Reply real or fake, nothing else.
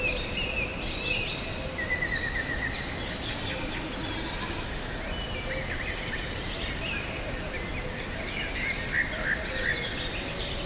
real